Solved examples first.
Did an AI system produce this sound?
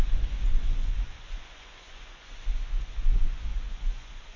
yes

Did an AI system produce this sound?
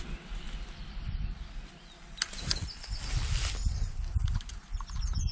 no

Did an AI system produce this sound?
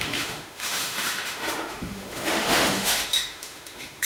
yes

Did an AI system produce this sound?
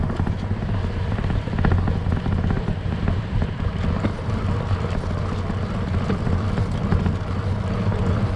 no